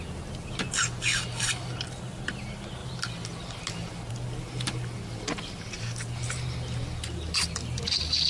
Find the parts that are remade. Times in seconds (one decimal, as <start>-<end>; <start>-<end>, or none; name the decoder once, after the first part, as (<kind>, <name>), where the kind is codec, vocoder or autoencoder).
none

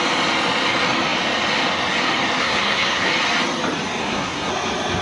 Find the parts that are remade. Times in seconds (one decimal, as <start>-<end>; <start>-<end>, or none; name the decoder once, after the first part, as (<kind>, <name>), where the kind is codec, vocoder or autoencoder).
2.4-3.1 (codec, SNAC); 4.0-4.5

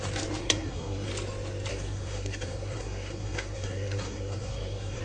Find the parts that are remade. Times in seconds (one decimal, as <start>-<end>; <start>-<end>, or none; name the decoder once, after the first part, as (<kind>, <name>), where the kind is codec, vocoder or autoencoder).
0.4-1.1 (codec, SNAC); 1.7-5.0

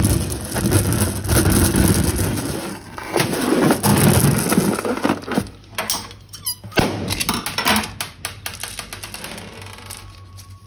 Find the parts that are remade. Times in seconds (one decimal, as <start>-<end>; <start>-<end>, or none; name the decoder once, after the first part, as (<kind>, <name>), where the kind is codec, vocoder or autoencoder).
2.7-3.2 (codec, SNAC)

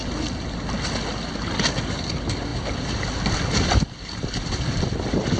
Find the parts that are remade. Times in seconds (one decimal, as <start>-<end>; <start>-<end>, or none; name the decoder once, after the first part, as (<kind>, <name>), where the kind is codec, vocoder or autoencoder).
none

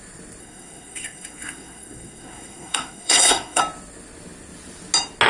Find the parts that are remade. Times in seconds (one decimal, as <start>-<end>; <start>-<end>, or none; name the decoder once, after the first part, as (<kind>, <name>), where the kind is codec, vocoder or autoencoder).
0.4-3.6 (codec, SNAC)